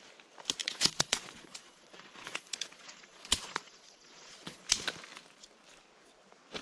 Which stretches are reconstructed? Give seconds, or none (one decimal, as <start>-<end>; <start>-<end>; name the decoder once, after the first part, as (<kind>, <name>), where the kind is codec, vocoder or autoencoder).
0.6-4.6 (vocoder, Vocos)